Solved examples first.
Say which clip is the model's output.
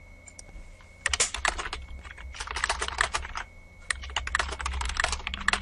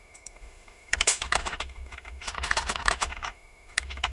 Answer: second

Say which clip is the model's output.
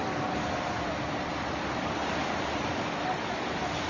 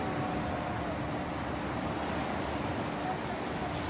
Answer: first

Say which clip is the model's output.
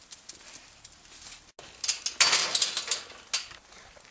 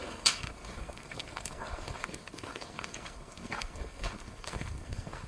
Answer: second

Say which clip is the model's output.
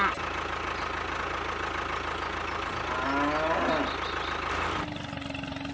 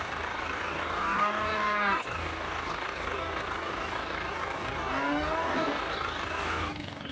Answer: second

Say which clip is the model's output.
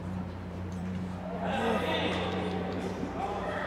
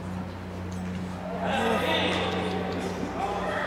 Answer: first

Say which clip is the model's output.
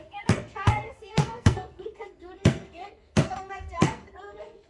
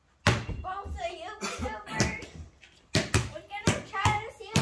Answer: first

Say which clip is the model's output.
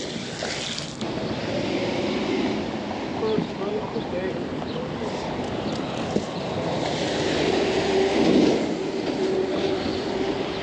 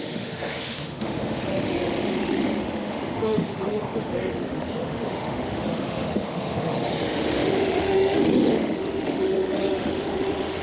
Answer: second